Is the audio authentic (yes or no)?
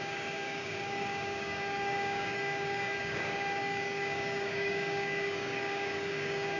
no